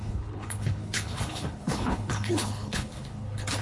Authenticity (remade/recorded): remade